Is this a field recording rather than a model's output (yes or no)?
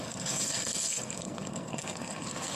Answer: no